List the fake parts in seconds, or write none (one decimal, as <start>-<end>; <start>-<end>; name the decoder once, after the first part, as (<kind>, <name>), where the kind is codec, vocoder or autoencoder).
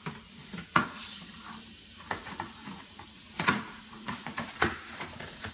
0.4-1.0 (vocoder, Vocos); 1.9-5.5